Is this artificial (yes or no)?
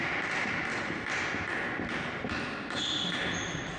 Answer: no